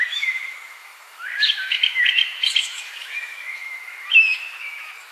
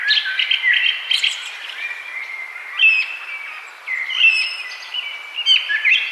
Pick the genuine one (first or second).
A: second